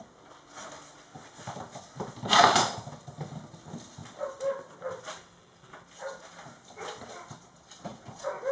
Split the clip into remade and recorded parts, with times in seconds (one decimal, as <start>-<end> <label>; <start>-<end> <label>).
0.0-8.5 recorded